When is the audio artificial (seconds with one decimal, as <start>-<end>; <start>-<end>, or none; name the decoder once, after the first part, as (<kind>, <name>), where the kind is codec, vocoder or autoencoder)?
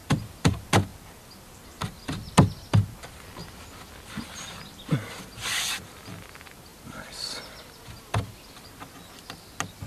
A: 0.0-0.5 (vocoder, BigVGAN v2); 0.9-2.3; 3.4-5.9; 6.7-7.8